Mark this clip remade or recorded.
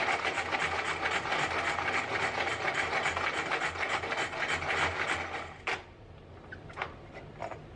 recorded